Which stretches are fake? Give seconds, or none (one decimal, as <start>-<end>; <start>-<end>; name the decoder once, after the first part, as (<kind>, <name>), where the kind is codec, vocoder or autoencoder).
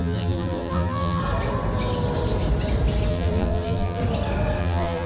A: 0.0-1.2 (vocoder, BigVGAN v2); 3.1-4.0; 4.6-5.1